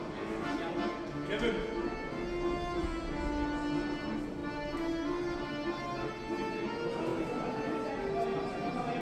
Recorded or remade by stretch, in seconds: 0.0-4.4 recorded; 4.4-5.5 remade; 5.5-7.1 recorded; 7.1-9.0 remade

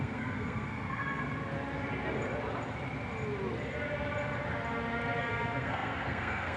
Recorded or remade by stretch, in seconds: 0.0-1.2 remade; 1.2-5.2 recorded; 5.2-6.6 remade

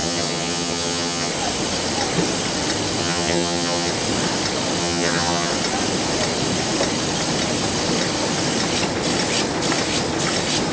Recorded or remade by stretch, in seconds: 0.0-1.3 remade; 1.3-3.0 recorded; 3.0-3.9 remade; 3.9-4.8 recorded; 4.8-5.5 remade; 5.5-10.7 recorded